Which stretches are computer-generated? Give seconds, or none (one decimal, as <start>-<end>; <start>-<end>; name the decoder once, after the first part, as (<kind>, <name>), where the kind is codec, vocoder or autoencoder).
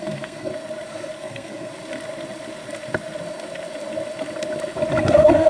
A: 0.0-0.5 (codec, SNAC); 1.2-1.7; 5.0-5.5